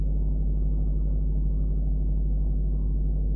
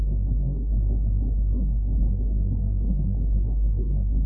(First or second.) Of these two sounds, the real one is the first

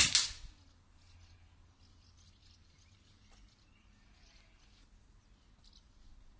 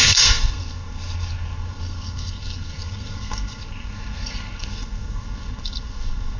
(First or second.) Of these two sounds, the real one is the first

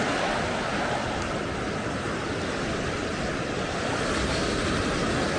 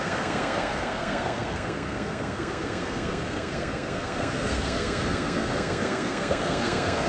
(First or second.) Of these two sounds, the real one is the first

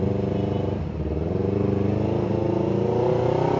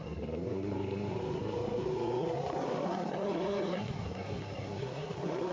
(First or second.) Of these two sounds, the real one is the first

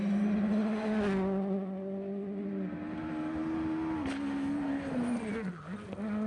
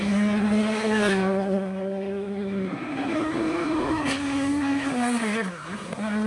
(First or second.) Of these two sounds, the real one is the first